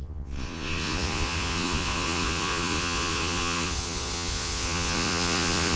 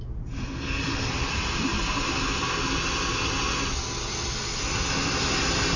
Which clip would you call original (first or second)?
second